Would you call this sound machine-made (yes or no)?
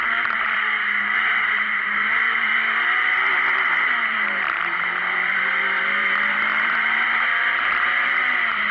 yes